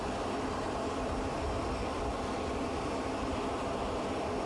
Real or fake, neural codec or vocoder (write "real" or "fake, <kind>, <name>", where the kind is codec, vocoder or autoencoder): real